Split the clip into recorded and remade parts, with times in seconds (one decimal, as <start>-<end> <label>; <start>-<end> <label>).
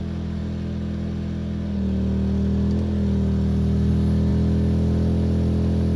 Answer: 0.0-6.0 recorded